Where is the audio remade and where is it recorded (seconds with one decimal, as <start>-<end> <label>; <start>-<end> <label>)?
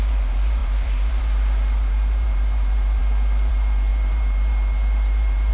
0.0-3.0 remade; 3.0-3.5 recorded; 3.5-5.5 remade